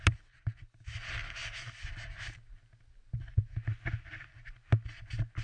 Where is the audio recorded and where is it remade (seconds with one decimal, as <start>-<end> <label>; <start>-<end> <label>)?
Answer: 0.0-5.4 recorded